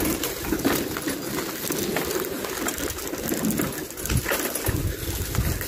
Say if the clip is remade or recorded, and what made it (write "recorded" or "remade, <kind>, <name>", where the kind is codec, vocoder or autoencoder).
recorded